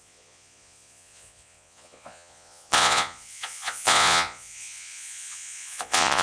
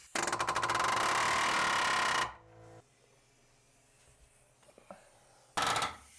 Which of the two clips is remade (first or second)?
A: first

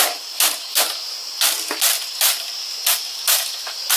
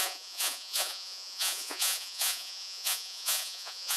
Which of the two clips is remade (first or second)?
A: second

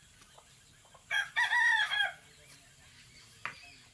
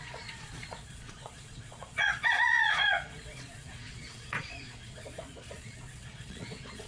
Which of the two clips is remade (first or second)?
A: second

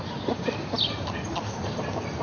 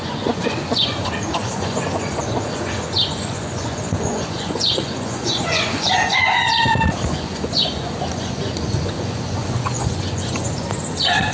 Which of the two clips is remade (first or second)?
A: second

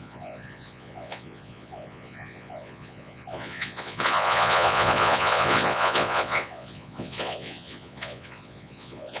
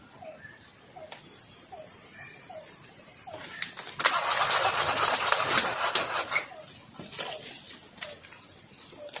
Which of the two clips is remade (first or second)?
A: first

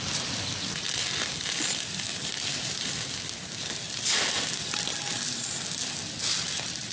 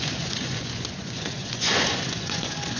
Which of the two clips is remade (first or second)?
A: second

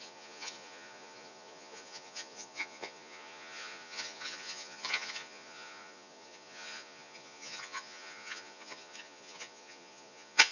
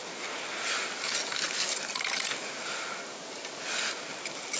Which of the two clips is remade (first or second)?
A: first